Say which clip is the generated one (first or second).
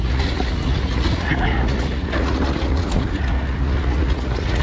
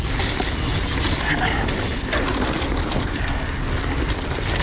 first